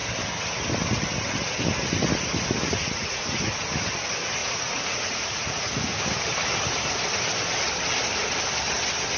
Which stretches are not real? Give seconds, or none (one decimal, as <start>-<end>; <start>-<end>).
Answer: 2.7-3.6; 4.4-6.0